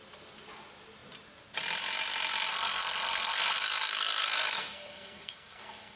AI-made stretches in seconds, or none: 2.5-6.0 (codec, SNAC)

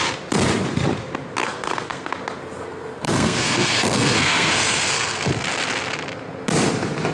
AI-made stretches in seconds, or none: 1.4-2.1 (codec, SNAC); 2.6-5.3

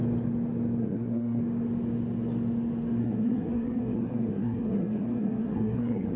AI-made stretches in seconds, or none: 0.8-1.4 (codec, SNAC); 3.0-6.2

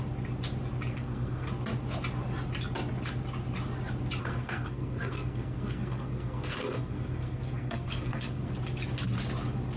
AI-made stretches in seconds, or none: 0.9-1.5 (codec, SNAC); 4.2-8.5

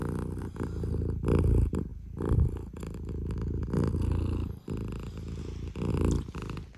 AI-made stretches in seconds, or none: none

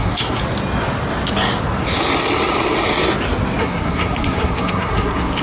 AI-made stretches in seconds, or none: 0.0-0.4 (codec, SNAC); 3.6-5.4

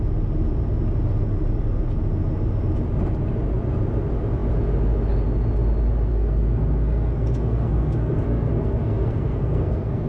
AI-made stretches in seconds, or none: 6.1-10.1 (codec, SNAC)

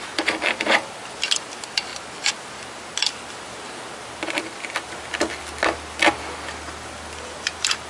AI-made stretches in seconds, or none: none